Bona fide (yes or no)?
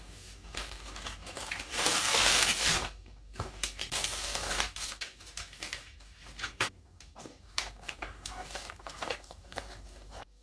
no